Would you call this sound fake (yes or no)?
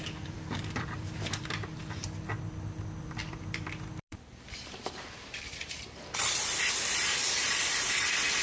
yes